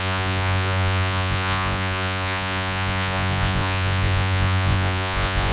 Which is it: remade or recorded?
remade